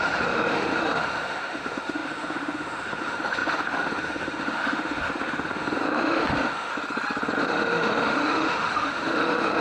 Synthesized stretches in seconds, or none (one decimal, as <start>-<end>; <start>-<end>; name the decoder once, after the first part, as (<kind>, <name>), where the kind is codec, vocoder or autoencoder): 0.0-6.7 (autoencoder, DAC-VAE); 7.4-9.6